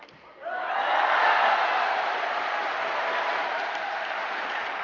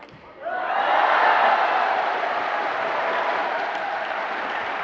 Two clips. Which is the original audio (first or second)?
first